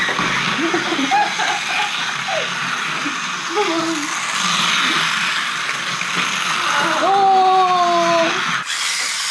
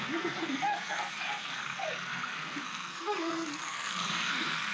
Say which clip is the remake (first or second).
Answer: second